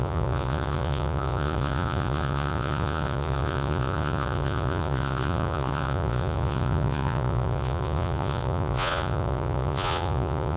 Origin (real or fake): fake